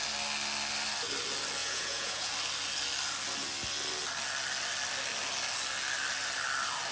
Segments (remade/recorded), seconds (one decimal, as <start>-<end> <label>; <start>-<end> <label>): 0.0-1.6 recorded; 1.6-2.3 remade; 2.3-6.9 recorded